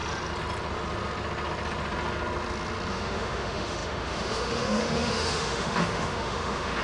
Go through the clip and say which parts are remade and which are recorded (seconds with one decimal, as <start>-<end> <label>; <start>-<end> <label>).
0.0-2.9 recorded; 2.9-6.8 remade